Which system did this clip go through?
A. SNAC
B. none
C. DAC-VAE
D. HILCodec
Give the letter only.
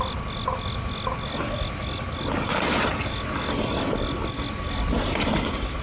B